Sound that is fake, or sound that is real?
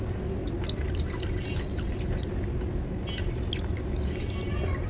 real